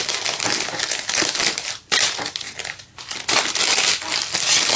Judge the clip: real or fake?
real